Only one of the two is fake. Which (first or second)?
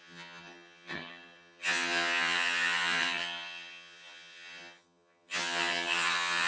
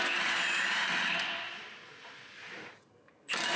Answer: first